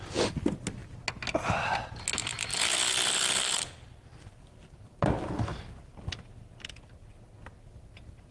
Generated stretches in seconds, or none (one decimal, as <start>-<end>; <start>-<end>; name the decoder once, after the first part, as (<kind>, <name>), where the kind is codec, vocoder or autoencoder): 2.5-4.2 (vocoder, BigVGAN v2)